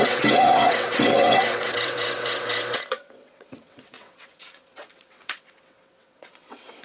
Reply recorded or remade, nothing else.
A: remade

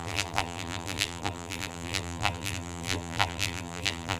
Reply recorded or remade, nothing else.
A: remade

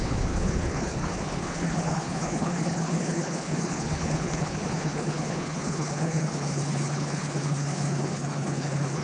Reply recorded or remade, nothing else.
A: remade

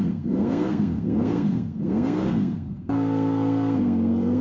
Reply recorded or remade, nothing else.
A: remade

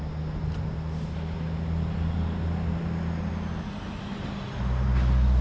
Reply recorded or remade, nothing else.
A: recorded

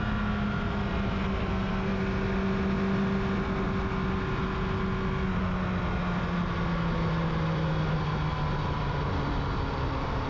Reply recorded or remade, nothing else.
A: recorded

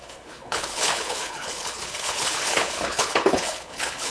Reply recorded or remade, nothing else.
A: remade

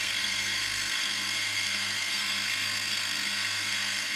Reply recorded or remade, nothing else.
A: remade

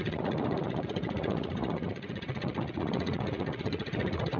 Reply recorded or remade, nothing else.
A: remade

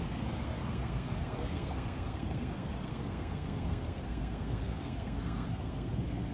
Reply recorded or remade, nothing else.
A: remade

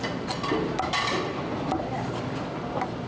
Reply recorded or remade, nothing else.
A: recorded